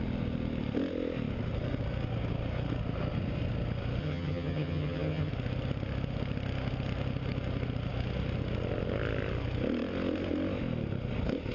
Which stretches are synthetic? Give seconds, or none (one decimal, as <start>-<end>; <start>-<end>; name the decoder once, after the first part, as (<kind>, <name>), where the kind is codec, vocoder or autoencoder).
4.0-5.3 (vocoder, HiFi-GAN)